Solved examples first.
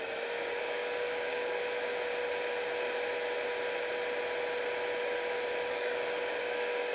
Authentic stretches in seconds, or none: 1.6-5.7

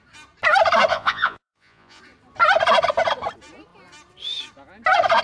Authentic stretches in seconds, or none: 0.0-0.9; 2.0-5.2

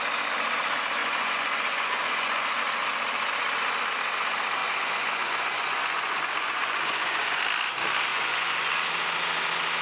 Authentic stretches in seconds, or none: 0.0-1.0; 2.6-4.6; 7.4-8.1; 8.7-9.8

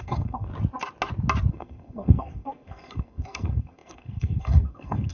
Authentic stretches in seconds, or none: 0.5-1.5

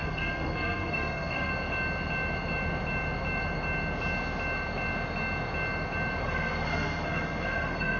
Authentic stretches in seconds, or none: 1.5-6.2

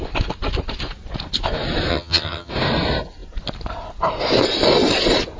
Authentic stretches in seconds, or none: 0.0-1.9; 2.5-5.4

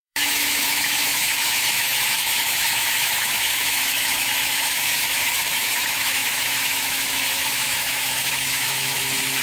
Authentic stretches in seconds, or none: none